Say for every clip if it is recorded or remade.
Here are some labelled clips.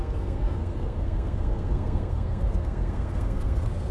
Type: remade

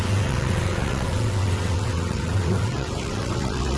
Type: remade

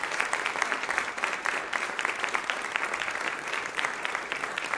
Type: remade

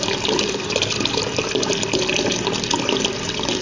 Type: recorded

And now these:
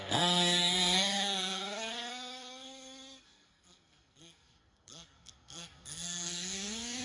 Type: remade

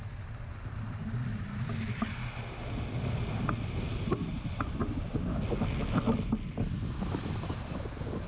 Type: recorded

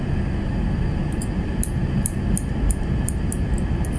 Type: recorded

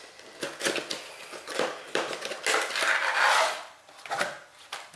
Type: recorded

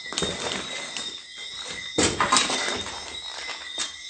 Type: recorded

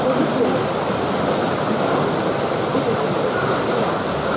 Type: recorded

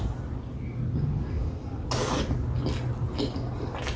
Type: recorded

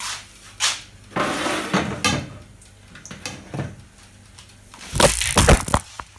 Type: recorded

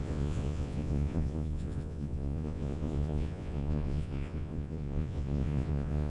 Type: remade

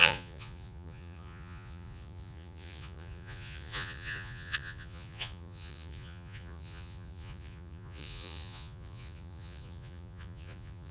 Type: remade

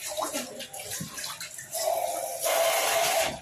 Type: recorded